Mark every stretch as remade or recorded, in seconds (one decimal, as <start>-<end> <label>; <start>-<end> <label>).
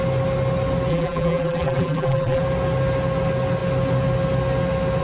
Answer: 0.0-0.9 recorded; 0.9-2.4 remade; 2.4-5.0 recorded